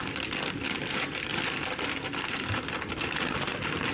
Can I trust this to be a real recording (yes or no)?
yes